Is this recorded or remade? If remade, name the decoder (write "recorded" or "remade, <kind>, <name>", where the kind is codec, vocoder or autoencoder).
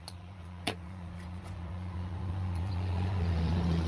remade, vocoder, Vocos